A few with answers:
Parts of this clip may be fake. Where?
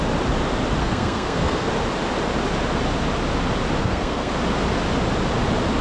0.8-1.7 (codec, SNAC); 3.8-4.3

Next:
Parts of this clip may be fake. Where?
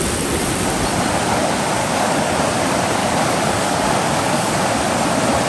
1.8-2.4 (codec, DAC); 3.0-4.6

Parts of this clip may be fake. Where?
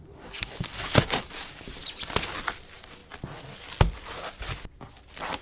0.4-1.7 (codec, DAC)